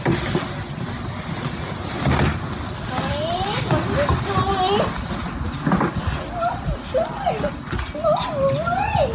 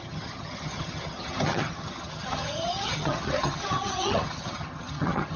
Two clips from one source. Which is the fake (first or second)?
second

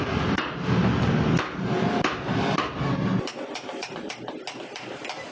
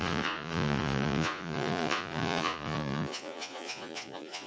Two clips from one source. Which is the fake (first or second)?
second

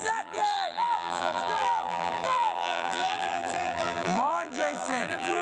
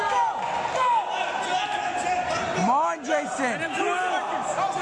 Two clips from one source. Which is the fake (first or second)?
first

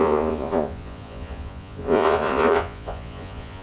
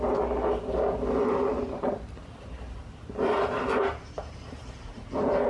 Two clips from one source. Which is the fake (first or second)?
first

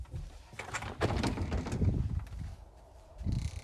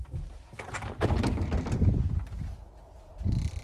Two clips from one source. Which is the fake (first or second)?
first